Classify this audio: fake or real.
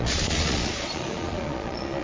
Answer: fake